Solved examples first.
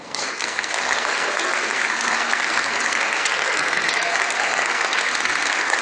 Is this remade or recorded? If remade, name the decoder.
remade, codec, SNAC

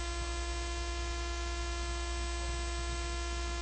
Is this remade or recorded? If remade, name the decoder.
recorded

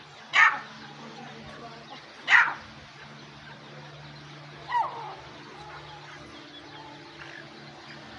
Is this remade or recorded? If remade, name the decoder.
recorded